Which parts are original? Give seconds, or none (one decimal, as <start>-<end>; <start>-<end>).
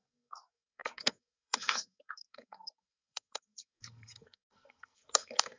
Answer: none